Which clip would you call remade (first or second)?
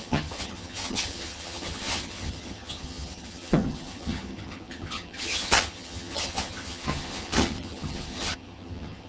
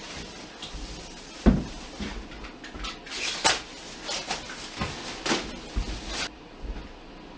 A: first